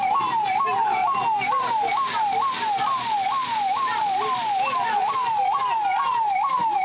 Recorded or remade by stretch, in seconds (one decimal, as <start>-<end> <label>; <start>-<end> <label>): 0.0-6.8 recorded